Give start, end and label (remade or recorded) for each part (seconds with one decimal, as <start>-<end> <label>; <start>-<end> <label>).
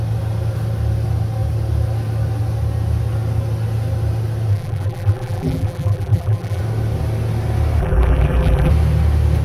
0.0-4.5 recorded; 4.5-6.6 remade; 6.6-7.8 recorded; 7.8-8.7 remade; 8.7-9.4 recorded